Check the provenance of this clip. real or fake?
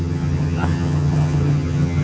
fake